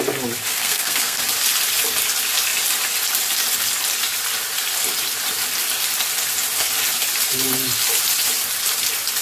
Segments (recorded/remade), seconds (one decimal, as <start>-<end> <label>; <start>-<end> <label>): 0.0-0.5 recorded; 0.5-1.2 remade; 1.2-9.2 recorded